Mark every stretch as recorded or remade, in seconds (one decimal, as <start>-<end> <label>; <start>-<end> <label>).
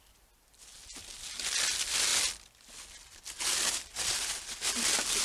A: 0.0-5.2 recorded